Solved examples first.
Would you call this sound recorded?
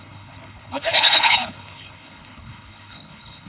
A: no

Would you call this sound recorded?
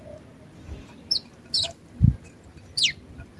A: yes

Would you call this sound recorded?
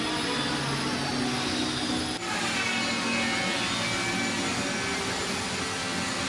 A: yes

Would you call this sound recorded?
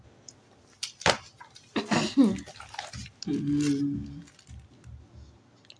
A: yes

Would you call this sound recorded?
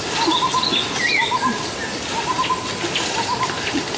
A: yes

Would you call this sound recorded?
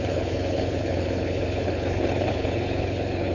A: no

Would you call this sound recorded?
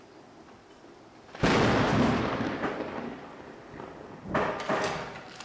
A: yes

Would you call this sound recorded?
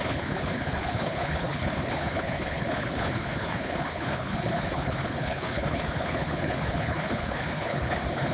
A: no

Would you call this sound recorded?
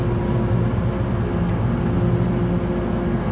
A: yes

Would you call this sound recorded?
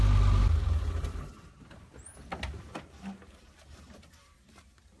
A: yes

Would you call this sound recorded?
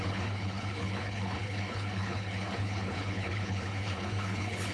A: no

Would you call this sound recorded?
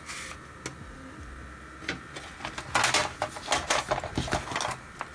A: yes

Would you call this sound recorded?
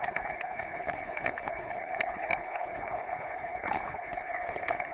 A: no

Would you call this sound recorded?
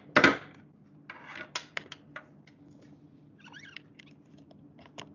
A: yes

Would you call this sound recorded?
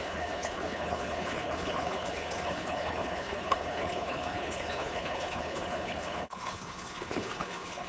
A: no